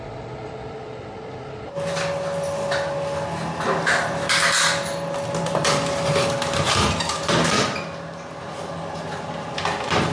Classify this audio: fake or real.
real